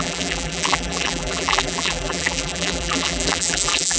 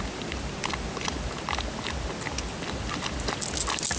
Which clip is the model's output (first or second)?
first